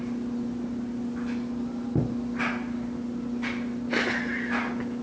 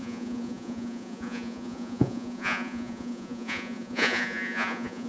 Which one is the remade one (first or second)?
second